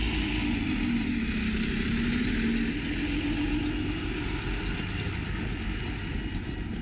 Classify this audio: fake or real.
real